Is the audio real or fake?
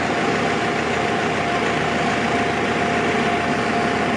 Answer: real